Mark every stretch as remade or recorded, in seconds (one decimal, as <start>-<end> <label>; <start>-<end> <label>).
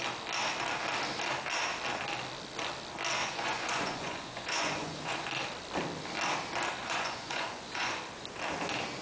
0.0-3.2 recorded; 3.2-5.3 remade; 5.3-6.8 recorded; 6.8-8.0 remade; 8.0-9.0 recorded